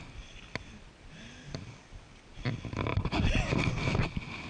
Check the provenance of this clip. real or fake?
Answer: real